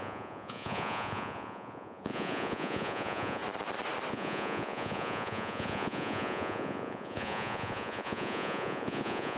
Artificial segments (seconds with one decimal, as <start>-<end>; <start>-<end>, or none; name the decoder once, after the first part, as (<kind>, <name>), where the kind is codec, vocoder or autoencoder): 0.0-3.4 (vocoder, Vocos); 4.1-9.4